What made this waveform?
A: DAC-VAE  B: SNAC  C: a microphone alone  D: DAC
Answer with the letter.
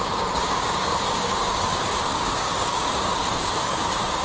D